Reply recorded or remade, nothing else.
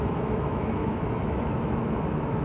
remade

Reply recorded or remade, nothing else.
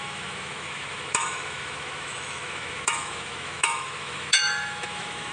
remade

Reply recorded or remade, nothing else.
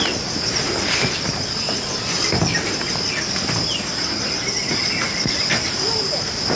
recorded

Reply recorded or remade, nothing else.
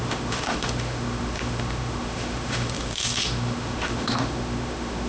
remade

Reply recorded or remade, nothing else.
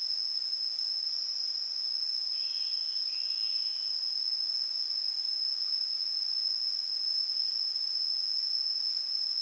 recorded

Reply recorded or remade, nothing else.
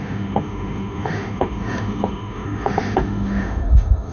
remade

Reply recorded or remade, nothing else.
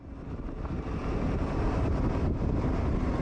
recorded